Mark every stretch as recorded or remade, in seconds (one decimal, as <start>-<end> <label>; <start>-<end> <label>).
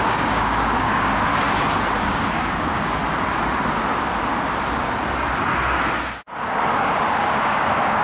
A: 0.0-1.3 remade; 1.3-2.0 recorded; 2.0-3.0 remade; 3.0-6.7 recorded; 6.7-8.0 remade